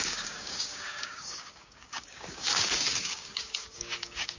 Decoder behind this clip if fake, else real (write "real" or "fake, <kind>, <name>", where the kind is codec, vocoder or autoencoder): fake, codec, DAC